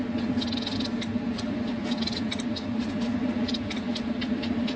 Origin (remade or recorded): recorded